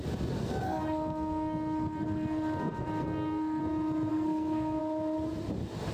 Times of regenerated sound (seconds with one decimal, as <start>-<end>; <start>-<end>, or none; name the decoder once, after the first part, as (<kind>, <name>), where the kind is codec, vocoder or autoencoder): 0.4-3.6 (codec, SNAC); 4.1-4.8